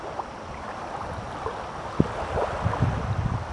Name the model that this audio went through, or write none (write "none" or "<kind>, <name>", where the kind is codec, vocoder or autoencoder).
none